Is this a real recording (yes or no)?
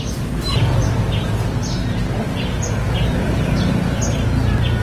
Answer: yes